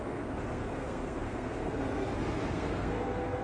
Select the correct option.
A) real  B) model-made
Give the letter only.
B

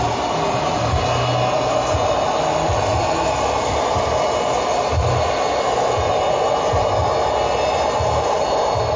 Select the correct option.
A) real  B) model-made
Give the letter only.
A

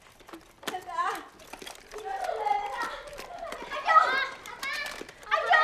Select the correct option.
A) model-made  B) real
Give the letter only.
B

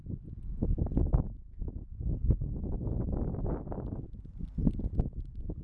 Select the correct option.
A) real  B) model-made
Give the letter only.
A